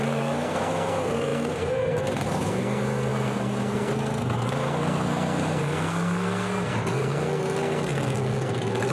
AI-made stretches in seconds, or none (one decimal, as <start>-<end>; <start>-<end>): 0.0-8.9

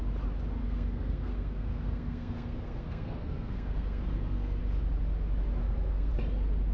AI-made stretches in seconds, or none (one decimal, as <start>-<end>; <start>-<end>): 0.6-4.6; 5.6-6.1